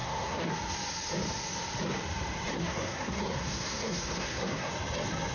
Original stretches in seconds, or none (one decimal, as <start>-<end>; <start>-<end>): 0.5-2.5; 4.7-5.3